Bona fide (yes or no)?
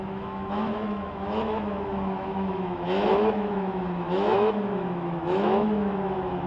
no